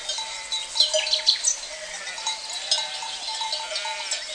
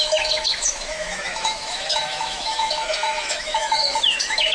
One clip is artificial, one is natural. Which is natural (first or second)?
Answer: first